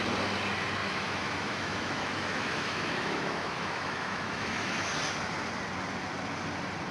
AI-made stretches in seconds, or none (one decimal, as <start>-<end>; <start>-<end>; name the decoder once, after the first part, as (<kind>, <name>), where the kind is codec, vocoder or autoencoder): 0.8-4.9 (autoencoder, DAC-VAE)

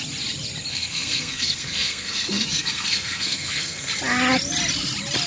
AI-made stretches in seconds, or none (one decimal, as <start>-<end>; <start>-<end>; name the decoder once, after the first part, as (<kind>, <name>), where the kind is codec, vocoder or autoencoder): 0.7-3.9 (codec, SNAC)

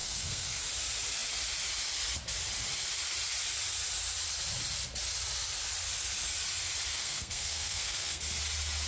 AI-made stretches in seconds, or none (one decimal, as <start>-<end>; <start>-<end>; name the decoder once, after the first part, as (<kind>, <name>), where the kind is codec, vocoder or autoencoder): 0.0-0.6 (codec, SNAC); 6.9-8.2

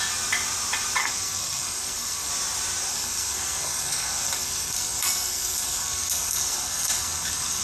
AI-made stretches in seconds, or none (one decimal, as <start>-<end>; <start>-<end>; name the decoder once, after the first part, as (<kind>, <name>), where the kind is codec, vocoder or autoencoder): 1.0-2.3 (codec, SNAC); 2.9-7.6

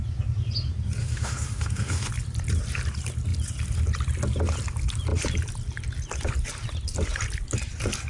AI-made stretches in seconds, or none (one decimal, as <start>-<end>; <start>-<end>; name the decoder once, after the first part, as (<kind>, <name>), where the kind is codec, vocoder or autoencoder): 1.0-2.1 (autoencoder, DAC-VAE)

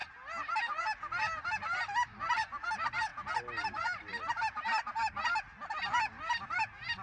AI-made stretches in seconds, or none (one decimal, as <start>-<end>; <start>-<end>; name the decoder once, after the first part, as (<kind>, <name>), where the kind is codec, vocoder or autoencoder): none